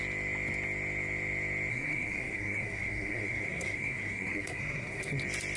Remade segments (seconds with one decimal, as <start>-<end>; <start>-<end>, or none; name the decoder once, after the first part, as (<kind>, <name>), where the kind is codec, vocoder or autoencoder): 1.7-5.1 (codec, SNAC)